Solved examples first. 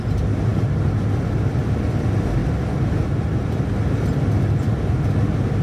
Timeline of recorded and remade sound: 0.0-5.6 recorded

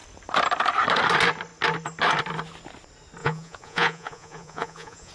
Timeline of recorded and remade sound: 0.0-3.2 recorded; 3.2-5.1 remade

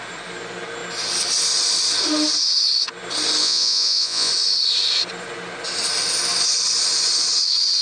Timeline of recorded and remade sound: 0.0-3.4 recorded; 3.4-4.3 remade; 4.3-7.8 recorded